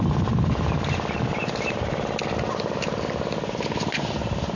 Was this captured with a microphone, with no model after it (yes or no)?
yes